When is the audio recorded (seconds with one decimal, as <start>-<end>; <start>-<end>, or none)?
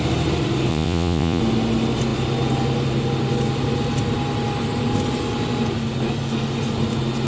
0.0-0.7; 1.4-7.3